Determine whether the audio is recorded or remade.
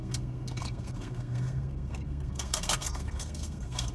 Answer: remade